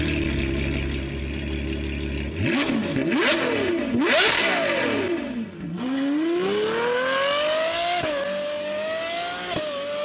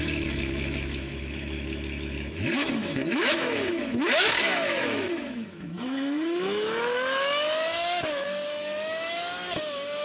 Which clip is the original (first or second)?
first